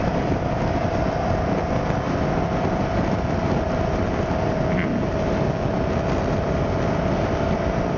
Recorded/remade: recorded